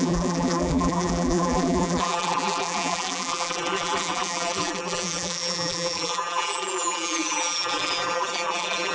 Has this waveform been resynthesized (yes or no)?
yes